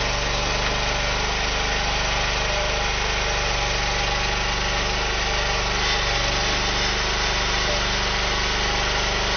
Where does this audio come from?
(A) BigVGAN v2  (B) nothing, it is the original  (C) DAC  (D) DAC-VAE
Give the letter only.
B